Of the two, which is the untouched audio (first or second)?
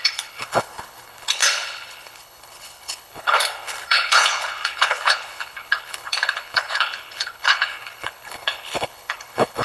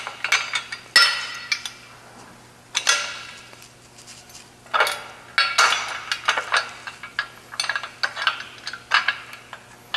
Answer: second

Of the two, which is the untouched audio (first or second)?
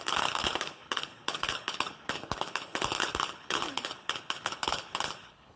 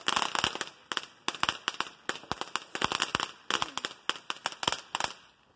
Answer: second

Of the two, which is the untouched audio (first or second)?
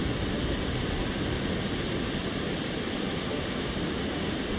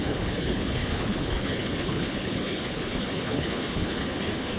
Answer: first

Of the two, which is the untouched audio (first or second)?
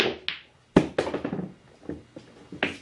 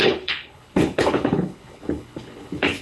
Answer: first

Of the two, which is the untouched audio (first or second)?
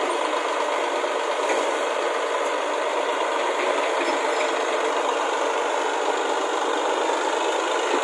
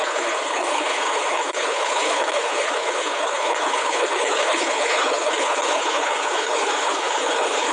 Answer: first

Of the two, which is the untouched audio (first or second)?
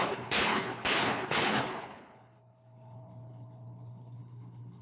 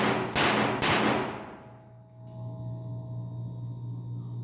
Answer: second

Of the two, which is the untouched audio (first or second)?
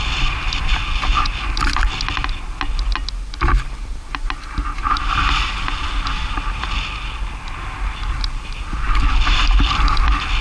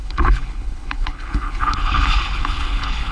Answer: first